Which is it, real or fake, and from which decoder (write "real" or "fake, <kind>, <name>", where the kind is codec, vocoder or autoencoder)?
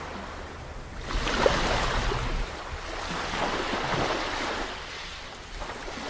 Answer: real